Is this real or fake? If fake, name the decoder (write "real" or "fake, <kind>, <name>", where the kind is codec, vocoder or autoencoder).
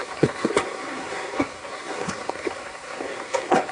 fake, codec, SNAC